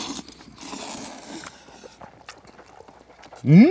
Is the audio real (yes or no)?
yes